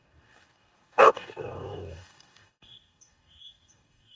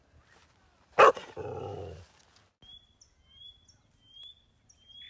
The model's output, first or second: first